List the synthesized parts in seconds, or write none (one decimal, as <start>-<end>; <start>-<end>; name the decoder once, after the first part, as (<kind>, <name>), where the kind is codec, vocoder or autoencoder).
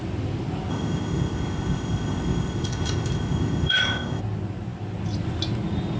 0.7-4.2 (codec, ZipCodec)